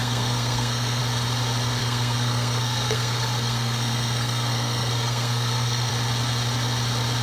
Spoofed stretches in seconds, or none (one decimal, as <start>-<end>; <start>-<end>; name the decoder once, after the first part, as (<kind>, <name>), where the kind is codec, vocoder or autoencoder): 0.0-1.0 (codec, SNAC); 1.8-5.9